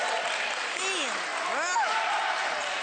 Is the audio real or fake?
real